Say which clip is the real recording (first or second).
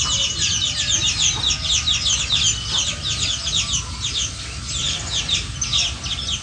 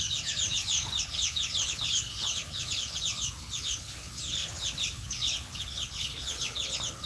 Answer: first